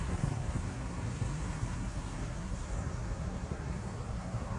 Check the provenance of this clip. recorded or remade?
remade